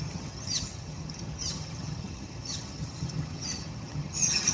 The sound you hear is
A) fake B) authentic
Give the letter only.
A